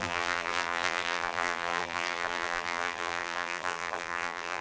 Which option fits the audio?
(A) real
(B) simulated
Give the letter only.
B